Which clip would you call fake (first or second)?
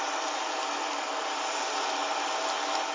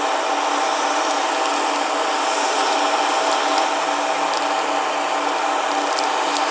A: first